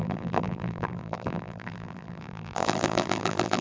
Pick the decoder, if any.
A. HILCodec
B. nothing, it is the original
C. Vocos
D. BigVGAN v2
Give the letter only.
D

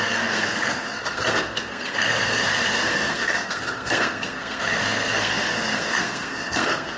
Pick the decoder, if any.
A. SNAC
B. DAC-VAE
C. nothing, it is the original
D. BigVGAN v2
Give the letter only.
A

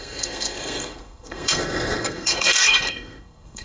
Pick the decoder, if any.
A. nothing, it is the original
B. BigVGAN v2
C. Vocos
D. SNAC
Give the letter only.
D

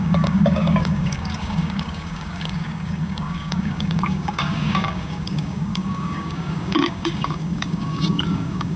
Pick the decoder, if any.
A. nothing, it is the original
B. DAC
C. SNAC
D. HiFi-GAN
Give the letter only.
B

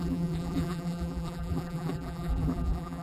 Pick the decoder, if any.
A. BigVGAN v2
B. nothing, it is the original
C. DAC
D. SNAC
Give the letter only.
A